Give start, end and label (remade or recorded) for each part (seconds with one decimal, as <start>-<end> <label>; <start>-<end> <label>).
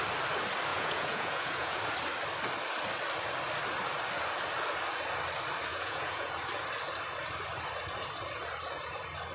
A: 0.0-0.7 recorded; 0.7-1.8 remade; 1.8-5.7 recorded; 5.7-6.3 remade; 6.3-9.3 recorded